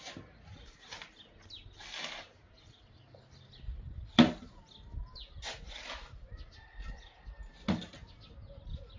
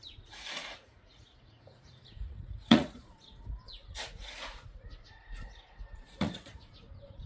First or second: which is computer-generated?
second